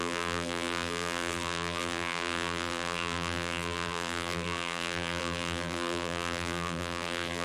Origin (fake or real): fake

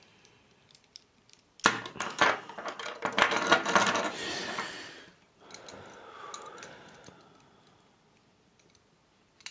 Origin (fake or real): real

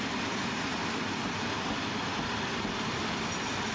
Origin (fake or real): real